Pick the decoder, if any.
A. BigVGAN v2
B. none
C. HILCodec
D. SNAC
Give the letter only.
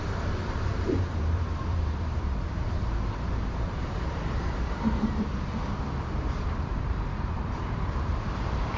A